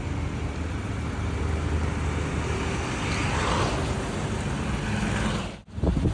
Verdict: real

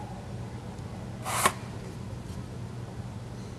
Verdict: real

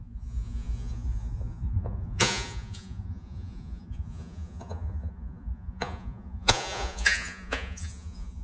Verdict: fake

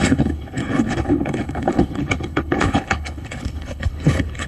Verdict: fake